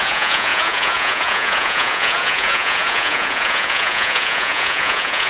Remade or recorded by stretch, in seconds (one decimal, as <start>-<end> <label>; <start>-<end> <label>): 0.0-5.3 remade